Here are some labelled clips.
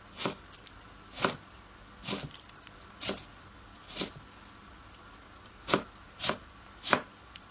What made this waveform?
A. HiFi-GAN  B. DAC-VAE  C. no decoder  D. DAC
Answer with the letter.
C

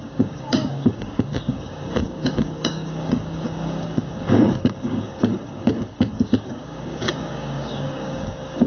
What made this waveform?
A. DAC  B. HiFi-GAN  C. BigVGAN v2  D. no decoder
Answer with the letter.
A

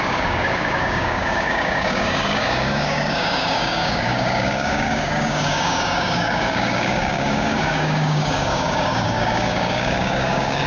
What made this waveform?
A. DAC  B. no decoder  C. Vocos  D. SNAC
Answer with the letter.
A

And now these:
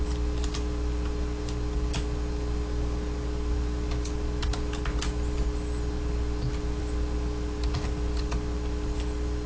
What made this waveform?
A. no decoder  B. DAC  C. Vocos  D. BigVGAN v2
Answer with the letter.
A